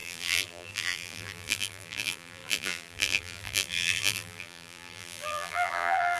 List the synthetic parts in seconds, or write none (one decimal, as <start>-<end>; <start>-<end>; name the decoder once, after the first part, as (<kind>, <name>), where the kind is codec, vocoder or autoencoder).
0.0-6.2 (vocoder, BigVGAN v2)